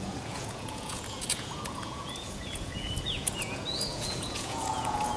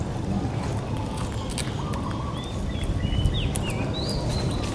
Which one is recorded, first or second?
second